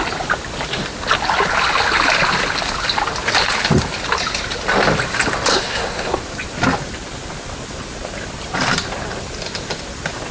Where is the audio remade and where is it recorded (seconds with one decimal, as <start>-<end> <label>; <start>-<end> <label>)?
0.0-5.5 recorded; 5.5-6.2 remade; 6.2-10.3 recorded